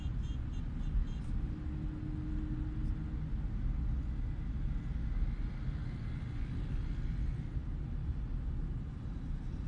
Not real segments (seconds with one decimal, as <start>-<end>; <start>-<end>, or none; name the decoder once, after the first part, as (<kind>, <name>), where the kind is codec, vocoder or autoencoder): none